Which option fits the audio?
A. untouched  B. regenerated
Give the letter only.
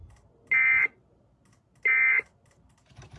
A